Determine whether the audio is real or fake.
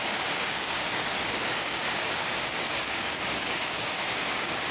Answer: fake